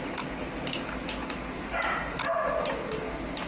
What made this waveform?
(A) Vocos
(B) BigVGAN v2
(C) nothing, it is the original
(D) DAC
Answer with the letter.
C